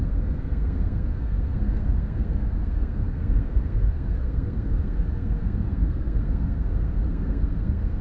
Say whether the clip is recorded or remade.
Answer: remade